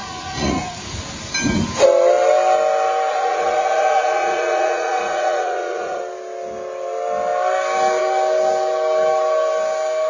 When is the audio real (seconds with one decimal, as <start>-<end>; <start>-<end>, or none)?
1.0-3.1; 6.0-10.1